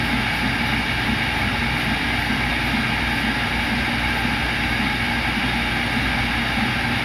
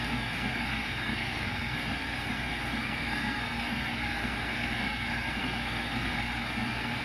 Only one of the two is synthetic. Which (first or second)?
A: second